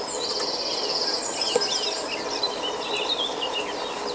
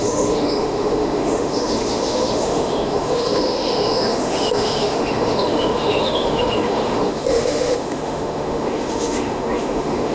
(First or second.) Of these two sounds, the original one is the first